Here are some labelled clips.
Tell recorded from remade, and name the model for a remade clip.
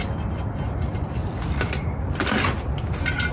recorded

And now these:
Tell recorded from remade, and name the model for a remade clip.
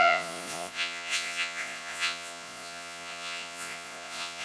remade, vocoder, Vocos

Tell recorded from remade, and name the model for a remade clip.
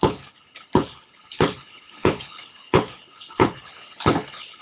remade, codec, HILCodec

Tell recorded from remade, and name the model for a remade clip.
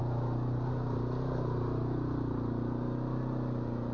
recorded